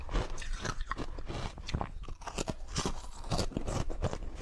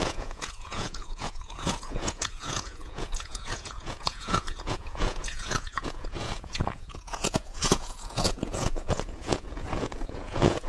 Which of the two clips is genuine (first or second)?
first